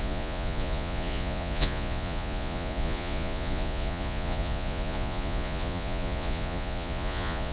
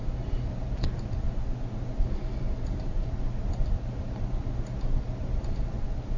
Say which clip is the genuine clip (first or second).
second